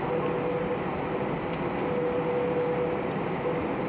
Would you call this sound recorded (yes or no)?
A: yes